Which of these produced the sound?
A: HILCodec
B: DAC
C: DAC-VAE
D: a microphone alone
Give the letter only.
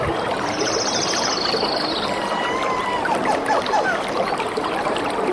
D